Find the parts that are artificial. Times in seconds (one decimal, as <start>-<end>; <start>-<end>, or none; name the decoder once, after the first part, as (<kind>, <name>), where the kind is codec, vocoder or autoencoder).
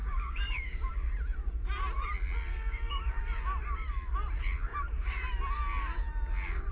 0.0-0.9 (codec, DAC); 2.5-3.2